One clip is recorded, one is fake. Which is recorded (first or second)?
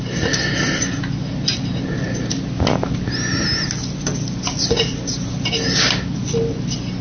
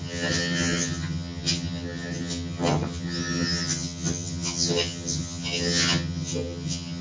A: first